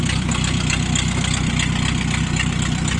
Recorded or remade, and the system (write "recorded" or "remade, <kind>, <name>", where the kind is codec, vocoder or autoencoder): recorded